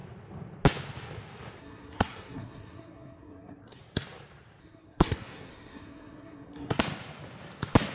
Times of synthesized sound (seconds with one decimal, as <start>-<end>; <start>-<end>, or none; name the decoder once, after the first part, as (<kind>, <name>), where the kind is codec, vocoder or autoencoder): 1.6-3.8 (codec, SNAC); 4.6-6.8